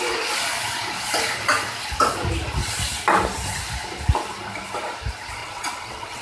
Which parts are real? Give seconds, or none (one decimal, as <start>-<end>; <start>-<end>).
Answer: 0.0-5.4